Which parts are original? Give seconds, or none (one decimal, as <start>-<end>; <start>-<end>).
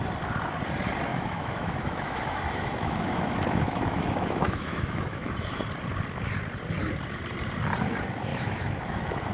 0.0-1.1; 5.6-8.3